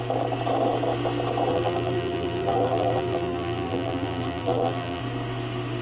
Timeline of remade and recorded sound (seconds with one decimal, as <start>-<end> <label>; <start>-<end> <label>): 0.0-1.5 recorded; 1.5-5.0 remade; 5.0-5.8 recorded